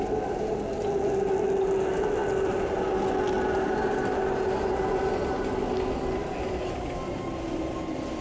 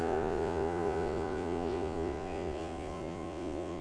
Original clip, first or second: first